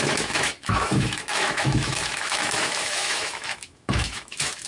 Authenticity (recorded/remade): remade